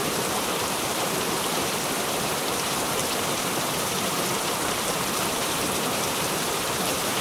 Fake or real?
fake